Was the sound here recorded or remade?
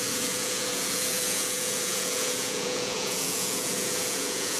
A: remade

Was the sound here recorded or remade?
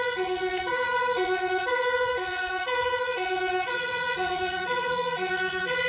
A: remade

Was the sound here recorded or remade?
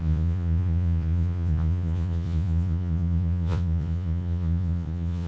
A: remade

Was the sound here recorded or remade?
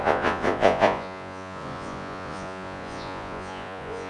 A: remade